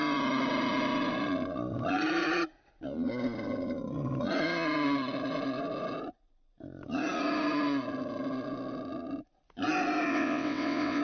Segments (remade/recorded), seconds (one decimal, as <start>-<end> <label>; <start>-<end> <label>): 0.0-10.1 recorded; 10.1-11.0 remade

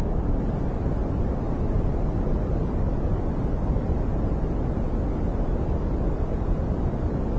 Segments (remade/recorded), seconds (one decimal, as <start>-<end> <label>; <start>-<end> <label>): 0.0-7.4 recorded

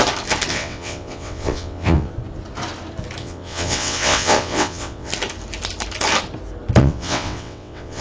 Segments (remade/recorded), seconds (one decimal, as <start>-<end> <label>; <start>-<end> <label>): 0.0-0.5 recorded; 0.5-2.1 remade; 2.1-3.2 recorded; 3.2-5.1 remade; 5.1-6.8 recorded; 6.8-8.0 remade

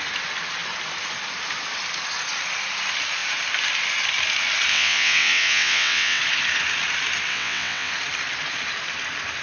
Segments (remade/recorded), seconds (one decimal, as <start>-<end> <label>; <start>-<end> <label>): 0.0-4.7 recorded; 4.7-6.2 remade; 6.2-7.3 recorded; 7.3-7.9 remade; 7.9-9.4 recorded